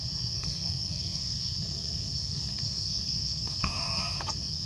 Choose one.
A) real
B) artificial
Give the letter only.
B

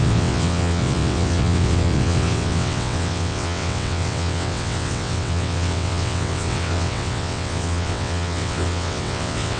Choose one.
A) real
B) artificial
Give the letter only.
B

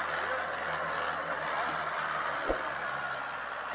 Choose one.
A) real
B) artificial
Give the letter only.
A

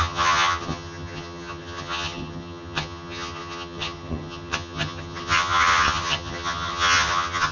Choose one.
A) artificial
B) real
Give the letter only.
A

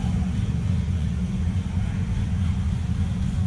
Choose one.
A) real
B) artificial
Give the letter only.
B